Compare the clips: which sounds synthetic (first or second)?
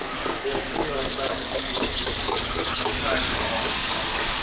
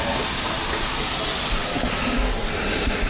first